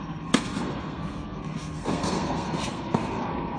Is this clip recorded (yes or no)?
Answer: no